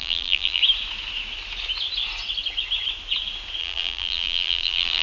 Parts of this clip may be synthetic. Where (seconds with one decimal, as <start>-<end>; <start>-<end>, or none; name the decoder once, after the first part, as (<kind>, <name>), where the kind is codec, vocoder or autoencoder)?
0.0-0.6 (vocoder, BigVGAN v2); 3.6-5.0